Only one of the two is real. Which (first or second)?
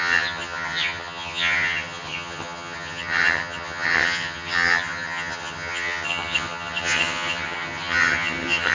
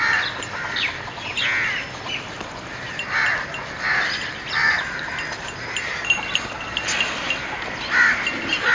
second